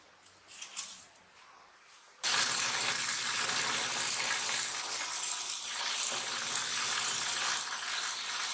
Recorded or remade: recorded